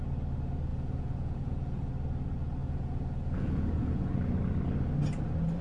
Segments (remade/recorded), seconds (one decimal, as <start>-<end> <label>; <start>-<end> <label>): 0.0-0.7 recorded; 0.7-1.9 remade; 1.9-2.6 recorded; 2.6-4.1 remade; 4.1-5.6 recorded